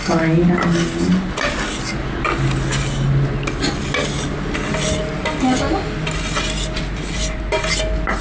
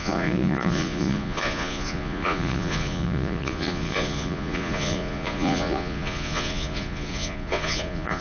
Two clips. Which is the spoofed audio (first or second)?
second